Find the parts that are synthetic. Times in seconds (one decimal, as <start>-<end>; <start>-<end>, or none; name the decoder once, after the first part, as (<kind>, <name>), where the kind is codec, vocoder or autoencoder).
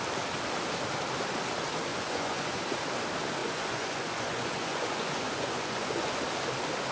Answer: 1.9-2.6 (vocoder, Vocos); 3.4-6.2